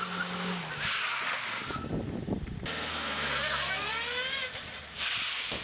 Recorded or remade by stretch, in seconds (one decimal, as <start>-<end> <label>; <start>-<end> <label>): 0.0-2.9 recorded; 2.9-3.9 remade; 3.9-5.6 recorded